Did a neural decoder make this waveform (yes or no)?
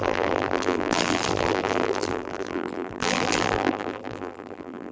yes